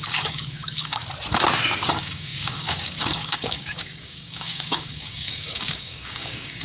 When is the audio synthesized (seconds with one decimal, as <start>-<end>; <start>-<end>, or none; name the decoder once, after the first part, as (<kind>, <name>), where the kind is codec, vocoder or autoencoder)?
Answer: 0.0-1.0 (codec, DAC); 1.9-6.6